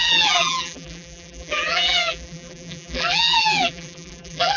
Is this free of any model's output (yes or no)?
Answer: no